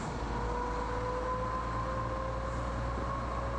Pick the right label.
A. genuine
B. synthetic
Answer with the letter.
A